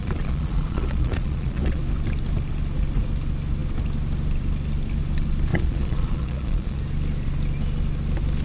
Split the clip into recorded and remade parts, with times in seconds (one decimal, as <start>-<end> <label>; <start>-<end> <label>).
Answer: 0.0-1.8 remade; 1.8-5.5 recorded; 5.5-6.8 remade; 6.8-8.4 recorded